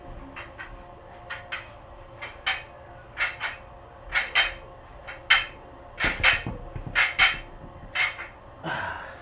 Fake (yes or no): no